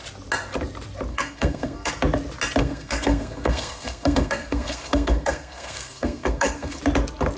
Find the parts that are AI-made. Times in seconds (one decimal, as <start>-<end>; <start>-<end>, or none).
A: 1.1-1.9; 2.6-6.8